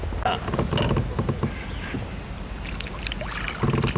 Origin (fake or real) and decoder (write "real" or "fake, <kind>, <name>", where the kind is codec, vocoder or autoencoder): real